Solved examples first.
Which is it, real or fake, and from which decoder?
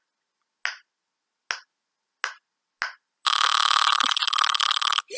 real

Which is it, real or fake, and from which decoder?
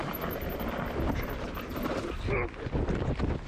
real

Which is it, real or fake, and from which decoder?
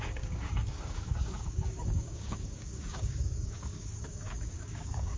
fake, codec, DAC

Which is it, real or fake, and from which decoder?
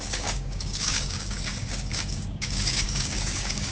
fake, codec, DAC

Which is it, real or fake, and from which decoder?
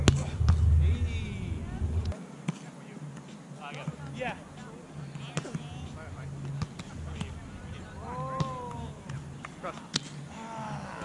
real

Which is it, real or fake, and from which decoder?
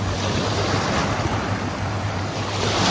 real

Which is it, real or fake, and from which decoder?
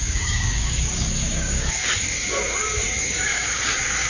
fake, codec, DAC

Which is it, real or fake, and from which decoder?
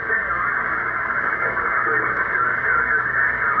fake, codec, DAC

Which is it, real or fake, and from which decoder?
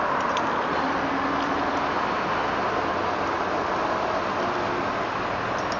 real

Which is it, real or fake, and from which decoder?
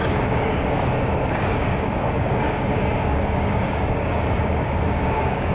fake, codec, DAC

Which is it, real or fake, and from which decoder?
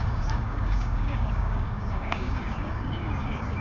fake, codec, DAC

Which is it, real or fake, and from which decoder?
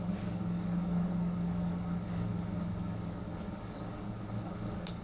fake, codec, DAC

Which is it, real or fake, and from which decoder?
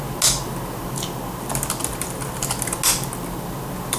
real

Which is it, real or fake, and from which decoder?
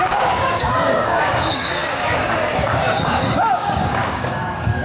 fake, codec, DAC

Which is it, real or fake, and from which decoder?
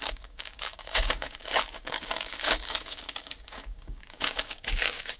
fake, codec, DAC